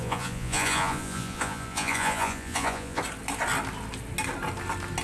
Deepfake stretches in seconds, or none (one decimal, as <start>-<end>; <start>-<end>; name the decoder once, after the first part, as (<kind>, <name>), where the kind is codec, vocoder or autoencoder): 0.0-3.0 (vocoder, Vocos)